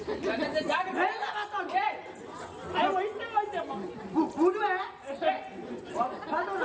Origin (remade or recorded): recorded